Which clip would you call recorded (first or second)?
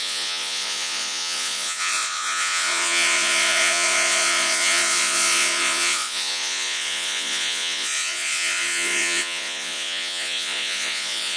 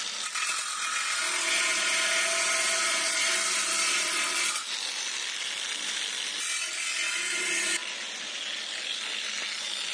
second